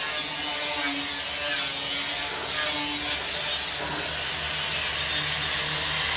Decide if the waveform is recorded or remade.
recorded